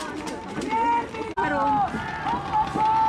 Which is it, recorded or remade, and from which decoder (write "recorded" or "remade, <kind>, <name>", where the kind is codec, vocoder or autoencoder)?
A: recorded